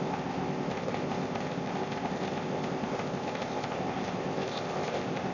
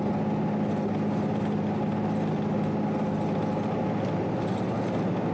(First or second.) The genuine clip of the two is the second